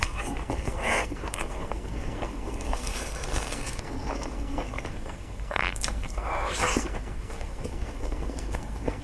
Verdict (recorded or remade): remade